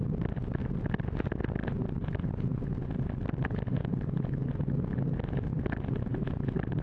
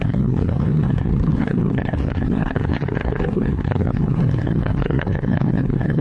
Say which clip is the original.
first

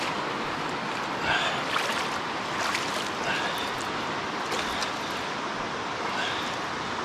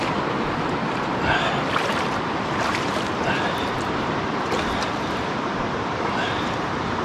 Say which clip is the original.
first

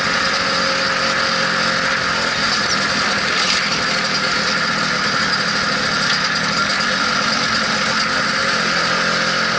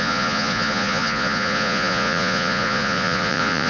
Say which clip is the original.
first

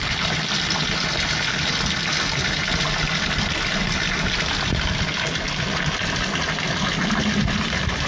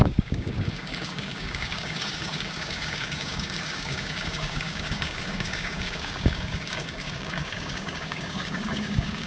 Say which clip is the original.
first